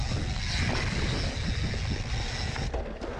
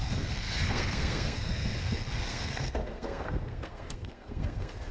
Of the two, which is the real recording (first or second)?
first